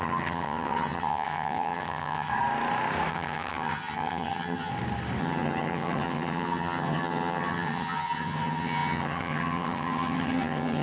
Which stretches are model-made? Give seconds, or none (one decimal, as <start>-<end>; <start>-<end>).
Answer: 0.0-2.3; 3.1-4.7; 5.2-10.8